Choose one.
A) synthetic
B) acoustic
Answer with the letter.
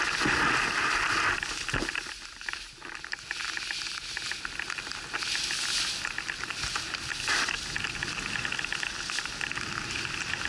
B